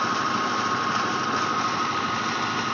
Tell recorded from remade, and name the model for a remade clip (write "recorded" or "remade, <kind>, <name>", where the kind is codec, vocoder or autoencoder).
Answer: recorded